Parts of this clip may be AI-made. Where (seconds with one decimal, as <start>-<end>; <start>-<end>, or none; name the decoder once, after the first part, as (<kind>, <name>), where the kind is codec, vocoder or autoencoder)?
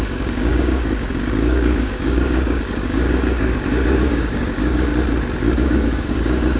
0.0-4.9 (codec, DAC); 5.4-6.6